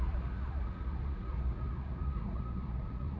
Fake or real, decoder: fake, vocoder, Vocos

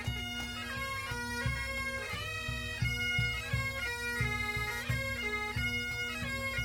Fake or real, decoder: real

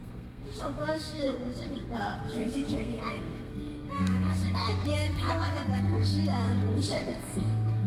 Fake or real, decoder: fake, codec, SNAC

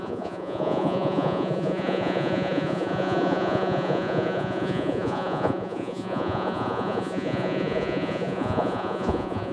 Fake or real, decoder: fake, vocoder, Vocos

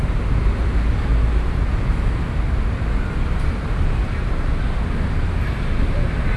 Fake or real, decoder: real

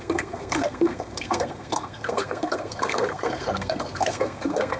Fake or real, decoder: fake, codec, SNAC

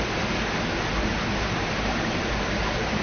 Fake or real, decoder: real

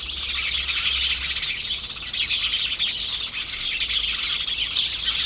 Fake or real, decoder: real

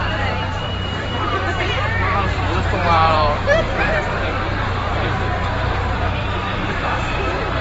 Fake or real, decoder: fake, vocoder, BigVGAN v2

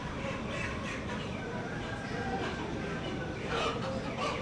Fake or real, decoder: fake, vocoder, BigVGAN v2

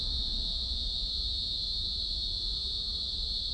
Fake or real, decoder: real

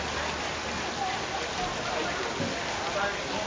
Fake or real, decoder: real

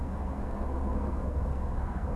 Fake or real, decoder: fake, codec, SNAC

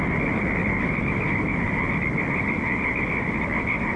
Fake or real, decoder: real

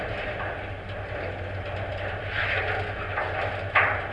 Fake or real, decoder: real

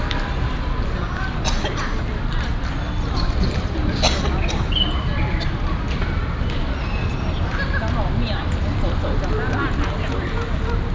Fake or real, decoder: real